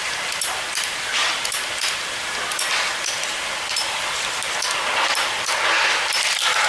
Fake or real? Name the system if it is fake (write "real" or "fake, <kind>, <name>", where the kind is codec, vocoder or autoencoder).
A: real